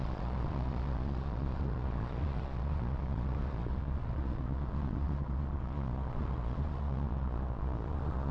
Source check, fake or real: fake